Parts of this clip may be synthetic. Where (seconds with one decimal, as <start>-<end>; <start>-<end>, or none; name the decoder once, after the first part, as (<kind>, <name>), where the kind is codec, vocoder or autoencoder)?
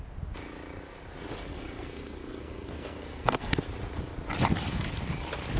1.5-3.6 (codec, SNAC)